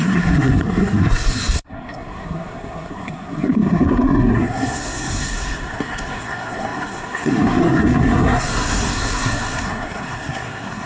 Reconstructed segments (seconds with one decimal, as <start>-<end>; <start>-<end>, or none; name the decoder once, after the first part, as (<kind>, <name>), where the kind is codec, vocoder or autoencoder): 0.0-10.9 (codec, SNAC)